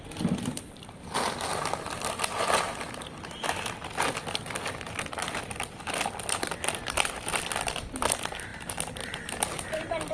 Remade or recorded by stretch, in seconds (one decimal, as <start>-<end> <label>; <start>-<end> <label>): 0.0-8.5 recorded; 8.5-9.2 remade; 9.2-10.1 recorded